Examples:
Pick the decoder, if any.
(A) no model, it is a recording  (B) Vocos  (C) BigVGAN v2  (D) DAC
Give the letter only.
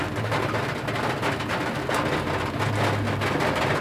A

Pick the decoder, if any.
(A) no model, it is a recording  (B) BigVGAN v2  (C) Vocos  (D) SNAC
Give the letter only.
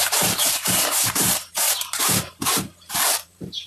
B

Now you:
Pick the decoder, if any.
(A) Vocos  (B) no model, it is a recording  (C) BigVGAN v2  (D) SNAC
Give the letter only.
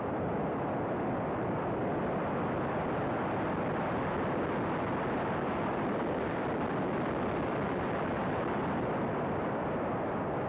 B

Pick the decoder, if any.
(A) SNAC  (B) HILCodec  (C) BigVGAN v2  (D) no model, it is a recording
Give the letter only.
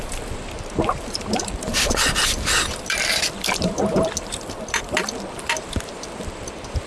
C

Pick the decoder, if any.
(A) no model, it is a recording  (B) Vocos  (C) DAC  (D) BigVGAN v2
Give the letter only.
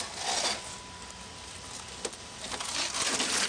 A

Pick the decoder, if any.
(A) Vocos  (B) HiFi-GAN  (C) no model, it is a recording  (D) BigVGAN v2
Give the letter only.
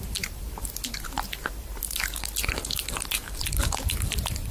D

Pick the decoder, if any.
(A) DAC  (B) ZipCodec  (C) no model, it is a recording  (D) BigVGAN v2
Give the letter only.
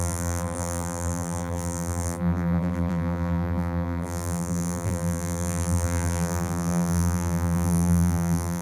D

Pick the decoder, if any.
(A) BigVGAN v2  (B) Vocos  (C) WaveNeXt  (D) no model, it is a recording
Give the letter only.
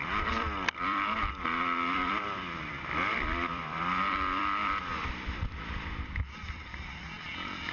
A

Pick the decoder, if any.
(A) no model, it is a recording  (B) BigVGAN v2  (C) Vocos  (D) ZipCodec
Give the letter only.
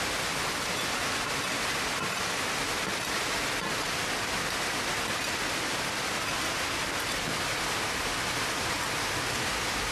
A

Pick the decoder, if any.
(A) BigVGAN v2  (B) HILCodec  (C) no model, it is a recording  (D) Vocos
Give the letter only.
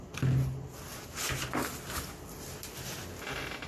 C